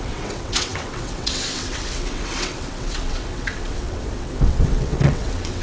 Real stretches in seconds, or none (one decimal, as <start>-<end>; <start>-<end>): none